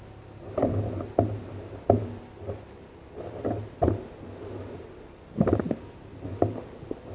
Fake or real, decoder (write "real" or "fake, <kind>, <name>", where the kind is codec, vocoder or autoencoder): real